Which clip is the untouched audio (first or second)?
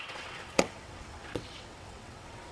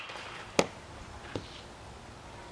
second